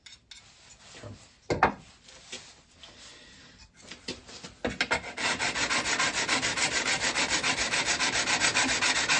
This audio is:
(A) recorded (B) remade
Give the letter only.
A